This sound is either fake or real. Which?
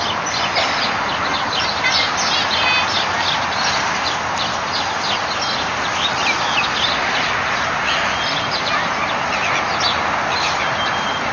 real